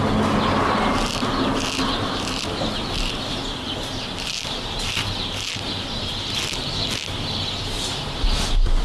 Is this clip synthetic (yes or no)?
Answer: no